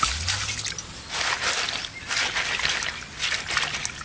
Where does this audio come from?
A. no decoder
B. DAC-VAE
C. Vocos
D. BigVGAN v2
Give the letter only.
A